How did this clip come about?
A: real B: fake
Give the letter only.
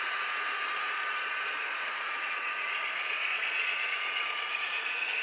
B